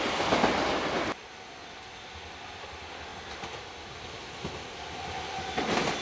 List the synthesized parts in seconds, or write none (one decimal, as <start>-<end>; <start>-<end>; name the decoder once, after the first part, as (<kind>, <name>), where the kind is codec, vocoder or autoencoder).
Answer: none